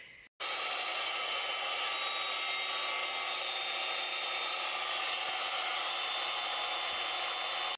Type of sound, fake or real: real